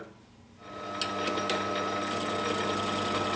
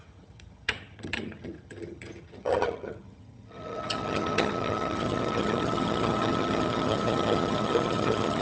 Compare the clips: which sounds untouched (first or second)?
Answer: first